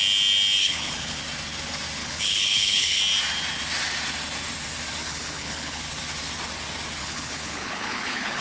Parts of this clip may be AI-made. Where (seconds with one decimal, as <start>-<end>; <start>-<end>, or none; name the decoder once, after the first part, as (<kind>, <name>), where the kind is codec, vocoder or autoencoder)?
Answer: 0.6-1.2 (codec, HILCodec); 2.0-3.0; 5.0-5.8; 7.0-8.4